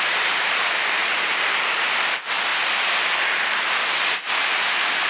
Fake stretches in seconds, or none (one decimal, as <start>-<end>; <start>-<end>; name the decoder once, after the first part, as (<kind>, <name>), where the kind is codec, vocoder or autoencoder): none